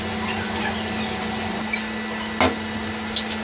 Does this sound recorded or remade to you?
recorded